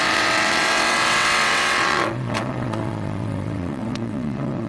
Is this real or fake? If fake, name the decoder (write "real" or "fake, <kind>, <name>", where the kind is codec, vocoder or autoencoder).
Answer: fake, vocoder, WaveNeXt